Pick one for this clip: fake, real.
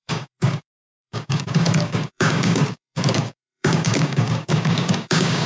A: fake